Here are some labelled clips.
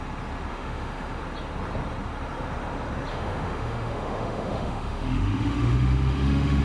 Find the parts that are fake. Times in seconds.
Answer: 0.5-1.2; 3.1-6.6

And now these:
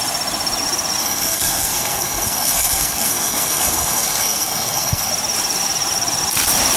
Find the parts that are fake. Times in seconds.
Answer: 1.0-5.1

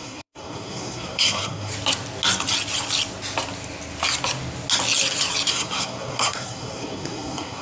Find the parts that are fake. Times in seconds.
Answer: 0.0-1.7; 5.5-7.6

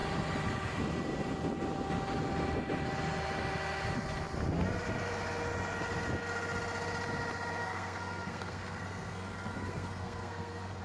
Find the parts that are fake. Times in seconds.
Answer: 7.6-10.8

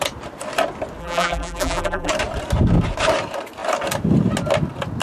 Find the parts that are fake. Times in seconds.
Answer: 1.0-2.1

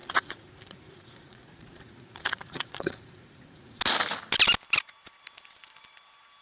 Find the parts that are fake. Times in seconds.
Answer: 0.0-3.8

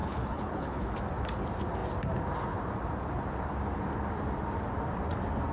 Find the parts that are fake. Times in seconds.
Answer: 0.0-1.0

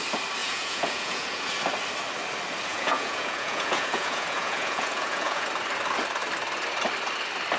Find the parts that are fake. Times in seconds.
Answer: 0.4-1.5; 2.7-5.5